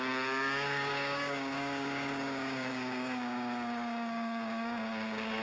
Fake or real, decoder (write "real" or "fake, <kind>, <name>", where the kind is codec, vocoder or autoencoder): fake, codec, DAC